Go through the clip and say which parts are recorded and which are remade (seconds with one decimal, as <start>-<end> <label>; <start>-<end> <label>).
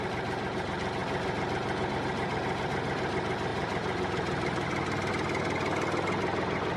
0.0-3.5 recorded; 3.5-5.1 remade; 5.1-6.8 recorded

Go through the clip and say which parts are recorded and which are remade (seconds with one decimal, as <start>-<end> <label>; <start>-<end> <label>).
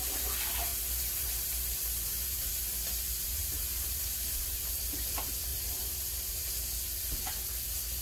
0.0-0.7 recorded; 0.7-2.5 remade; 2.5-3.2 recorded; 3.2-4.0 remade; 4.0-5.5 recorded; 5.5-6.5 remade; 6.5-8.0 recorded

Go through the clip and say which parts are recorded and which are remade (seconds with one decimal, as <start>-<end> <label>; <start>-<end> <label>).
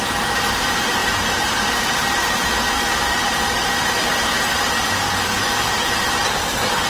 0.0-6.9 remade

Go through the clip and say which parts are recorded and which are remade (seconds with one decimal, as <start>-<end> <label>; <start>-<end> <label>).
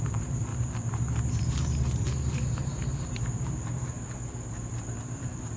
0.0-0.5 remade; 0.5-1.3 recorded; 1.3-5.6 remade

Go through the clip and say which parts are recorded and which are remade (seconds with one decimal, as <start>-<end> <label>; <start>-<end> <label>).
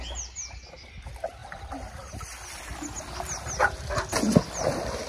0.0-1.4 recorded; 1.4-2.1 remade; 2.1-5.1 recorded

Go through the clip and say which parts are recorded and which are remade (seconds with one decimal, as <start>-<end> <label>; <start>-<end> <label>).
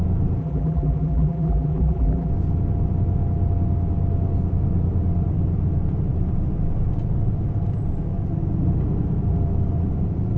0.0-0.4 recorded; 0.4-2.3 remade; 2.3-10.4 recorded